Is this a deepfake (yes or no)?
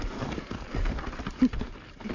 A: no